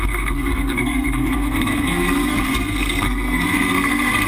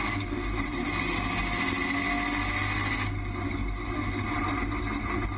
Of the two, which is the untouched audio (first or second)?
second